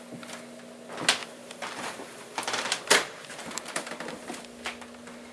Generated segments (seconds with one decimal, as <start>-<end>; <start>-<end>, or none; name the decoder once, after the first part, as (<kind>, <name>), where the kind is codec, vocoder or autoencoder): 1.2-4.4 (vocoder, BigVGAN v2)